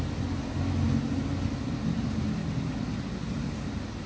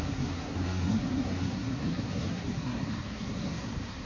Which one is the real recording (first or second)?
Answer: first